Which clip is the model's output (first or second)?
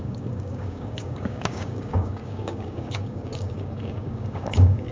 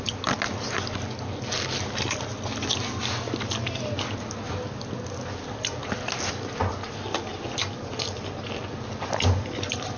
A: first